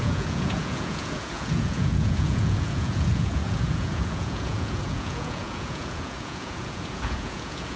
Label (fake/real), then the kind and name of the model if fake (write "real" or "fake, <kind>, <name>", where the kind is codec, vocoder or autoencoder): fake, vocoder, Vocos